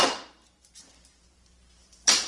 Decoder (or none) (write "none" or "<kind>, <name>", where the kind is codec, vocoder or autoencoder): vocoder, BigVGAN v2